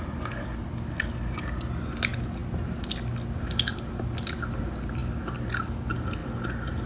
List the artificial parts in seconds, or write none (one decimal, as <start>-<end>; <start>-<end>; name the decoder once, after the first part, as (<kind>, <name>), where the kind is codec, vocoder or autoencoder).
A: none